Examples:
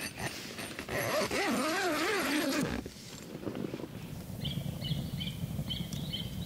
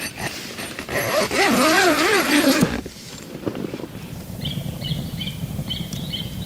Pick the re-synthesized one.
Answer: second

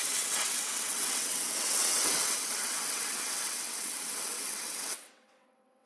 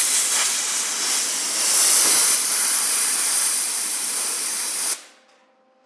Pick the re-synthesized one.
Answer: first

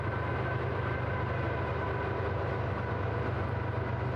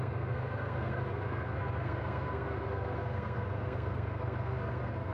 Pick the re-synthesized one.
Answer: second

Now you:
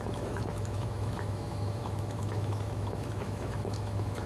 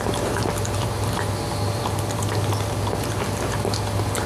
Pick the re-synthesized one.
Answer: first